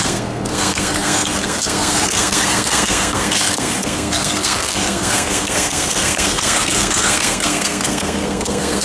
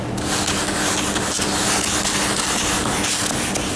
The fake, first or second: first